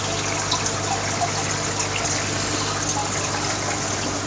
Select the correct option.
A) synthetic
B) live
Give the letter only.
B